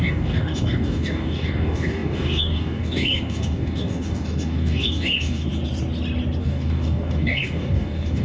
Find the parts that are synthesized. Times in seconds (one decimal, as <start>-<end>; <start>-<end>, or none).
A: 0.0-5.5; 6.4-8.2